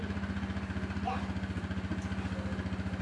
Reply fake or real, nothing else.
real